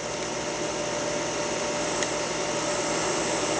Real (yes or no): yes